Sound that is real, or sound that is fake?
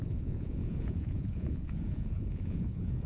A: fake